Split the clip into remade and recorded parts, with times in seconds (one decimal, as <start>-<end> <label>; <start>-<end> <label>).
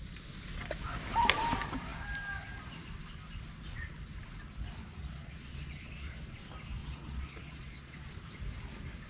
0.0-5.0 recorded; 5.0-6.2 remade; 6.2-6.8 recorded; 6.8-8.1 remade; 8.1-9.1 recorded